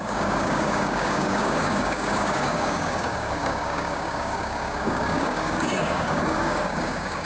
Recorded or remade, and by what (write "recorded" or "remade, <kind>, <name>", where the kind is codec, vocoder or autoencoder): remade, codec, DAC